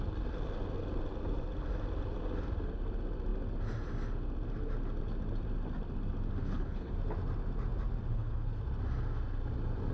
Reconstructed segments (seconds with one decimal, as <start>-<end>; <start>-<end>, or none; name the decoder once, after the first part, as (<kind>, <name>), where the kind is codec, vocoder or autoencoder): 6.4-6.9 (codec, HILCodec); 8.1-8.6